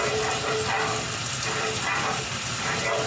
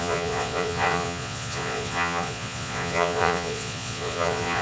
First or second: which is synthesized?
second